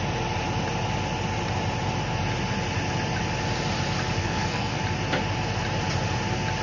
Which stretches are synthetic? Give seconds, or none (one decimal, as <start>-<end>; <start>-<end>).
4.2-4.8